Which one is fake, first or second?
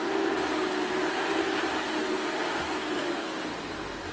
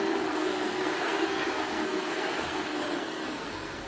second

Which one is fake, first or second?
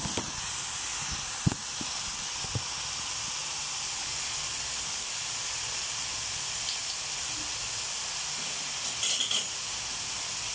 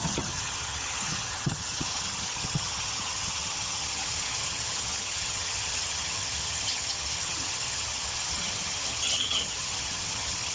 second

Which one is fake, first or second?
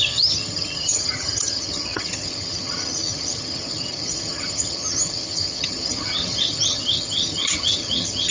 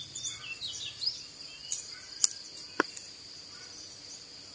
first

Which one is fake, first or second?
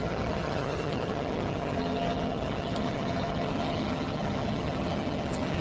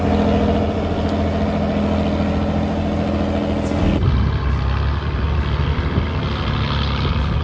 first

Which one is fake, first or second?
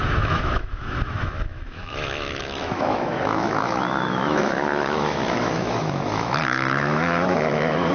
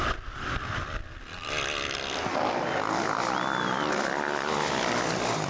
first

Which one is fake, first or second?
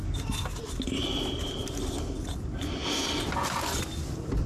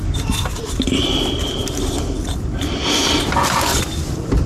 second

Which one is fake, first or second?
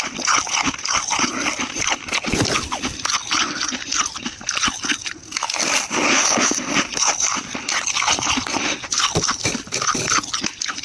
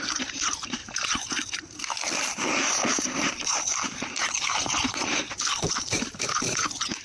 second